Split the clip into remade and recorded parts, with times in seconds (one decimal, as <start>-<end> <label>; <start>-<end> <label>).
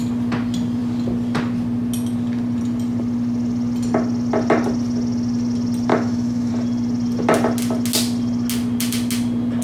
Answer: 0.0-5.9 recorded; 5.9-6.5 remade; 6.5-9.6 recorded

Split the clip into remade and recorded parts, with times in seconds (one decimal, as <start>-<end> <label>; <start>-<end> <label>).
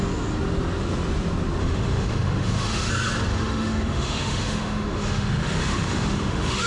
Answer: 0.0-1.6 recorded; 1.6-2.9 remade; 2.9-3.3 recorded; 3.3-6.7 remade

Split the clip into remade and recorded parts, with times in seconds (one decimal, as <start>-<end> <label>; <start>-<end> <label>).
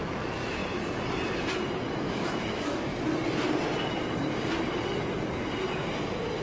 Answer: 0.0-0.6 remade; 0.6-1.9 recorded; 1.9-2.9 remade; 2.9-6.4 recorded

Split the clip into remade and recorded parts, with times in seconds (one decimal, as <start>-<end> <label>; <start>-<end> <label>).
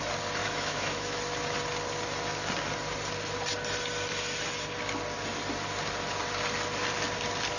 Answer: 0.0-0.4 recorded; 0.4-1.2 remade; 1.2-7.6 recorded